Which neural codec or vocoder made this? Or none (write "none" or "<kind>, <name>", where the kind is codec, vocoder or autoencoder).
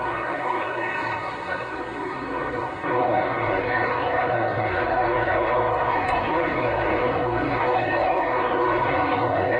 codec, SNAC